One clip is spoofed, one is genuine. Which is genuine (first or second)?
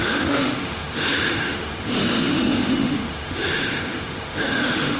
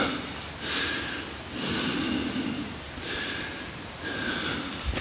second